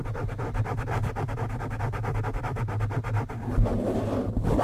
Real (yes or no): yes